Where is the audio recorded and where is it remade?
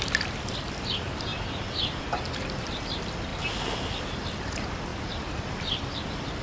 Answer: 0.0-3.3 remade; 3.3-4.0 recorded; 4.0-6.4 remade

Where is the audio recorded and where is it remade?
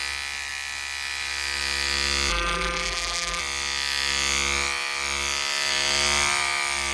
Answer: 0.0-2.3 recorded; 2.3-3.4 remade; 3.4-6.9 recorded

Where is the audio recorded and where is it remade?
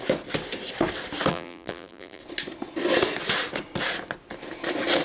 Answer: 0.0-1.3 recorded; 1.3-2.2 remade; 2.2-5.0 recorded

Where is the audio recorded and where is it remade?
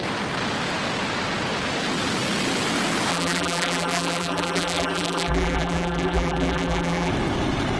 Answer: 0.0-3.1 recorded; 3.1-7.1 remade; 7.1-7.8 recorded